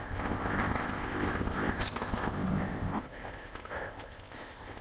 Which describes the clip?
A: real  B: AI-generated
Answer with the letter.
B